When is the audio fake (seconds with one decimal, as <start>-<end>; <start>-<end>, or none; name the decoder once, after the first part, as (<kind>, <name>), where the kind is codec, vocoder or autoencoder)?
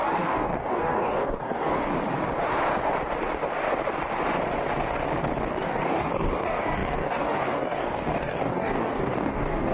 0.0-1.9 (codec, DAC); 5.5-9.7